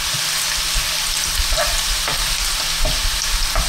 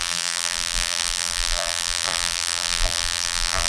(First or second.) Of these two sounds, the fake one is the second